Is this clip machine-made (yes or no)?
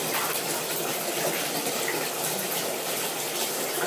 yes